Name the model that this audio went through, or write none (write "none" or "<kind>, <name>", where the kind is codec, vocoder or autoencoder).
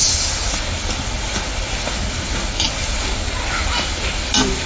none